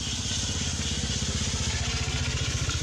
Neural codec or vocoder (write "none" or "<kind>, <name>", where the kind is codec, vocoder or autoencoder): none